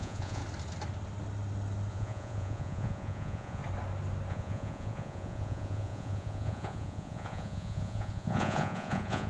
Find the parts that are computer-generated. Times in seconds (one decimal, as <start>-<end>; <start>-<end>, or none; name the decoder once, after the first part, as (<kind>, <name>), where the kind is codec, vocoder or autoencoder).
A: 0.0-0.4 (vocoder, Vocos); 1.9-3.6; 4.3-9.3